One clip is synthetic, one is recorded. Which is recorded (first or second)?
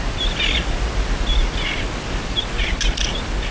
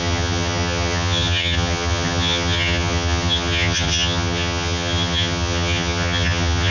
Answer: first